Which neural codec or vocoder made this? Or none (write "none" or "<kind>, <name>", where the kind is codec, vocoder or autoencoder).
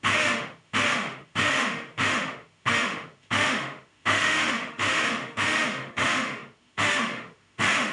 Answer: autoencoder, DAC-VAE